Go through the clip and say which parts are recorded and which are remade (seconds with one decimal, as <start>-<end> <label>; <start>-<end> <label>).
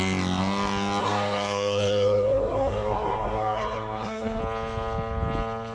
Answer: 0.0-1.0 recorded; 1.0-4.4 remade; 4.4-5.7 recorded